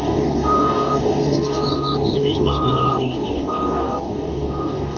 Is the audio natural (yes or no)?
no